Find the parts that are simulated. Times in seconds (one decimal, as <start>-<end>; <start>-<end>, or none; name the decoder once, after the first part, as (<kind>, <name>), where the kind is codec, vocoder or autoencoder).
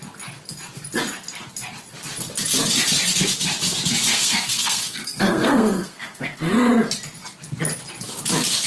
4.1-6.5 (codec, SNAC)